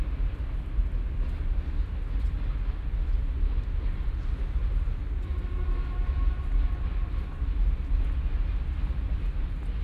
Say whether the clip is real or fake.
real